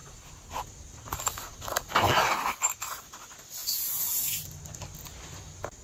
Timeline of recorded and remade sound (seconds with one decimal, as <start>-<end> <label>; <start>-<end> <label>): 0.0-0.5 remade; 0.5-3.6 recorded; 3.6-4.4 remade; 4.4-5.8 recorded